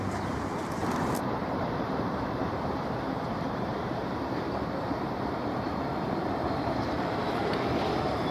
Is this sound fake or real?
fake